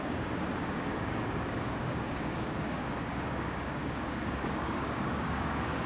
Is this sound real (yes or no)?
no